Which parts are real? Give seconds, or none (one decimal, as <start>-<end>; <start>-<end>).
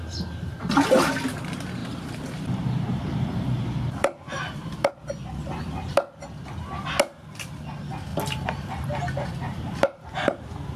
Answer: 0.0-1.8; 4.9-8.1; 10.1-10.8